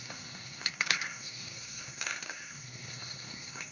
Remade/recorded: remade